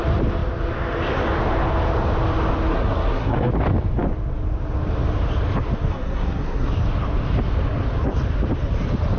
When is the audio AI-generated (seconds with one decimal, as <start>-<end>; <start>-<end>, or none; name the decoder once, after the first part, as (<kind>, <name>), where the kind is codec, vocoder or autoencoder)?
2.7-3.5 (codec, SNAC); 5.9-6.7